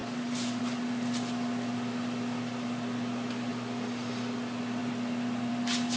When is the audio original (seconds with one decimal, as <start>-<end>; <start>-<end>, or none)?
0.0-6.0